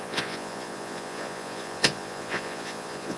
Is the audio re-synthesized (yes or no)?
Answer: yes